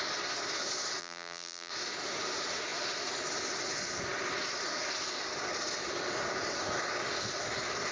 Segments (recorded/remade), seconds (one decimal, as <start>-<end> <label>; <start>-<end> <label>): 0.0-1.0 recorded; 1.0-1.7 remade; 1.7-7.9 recorded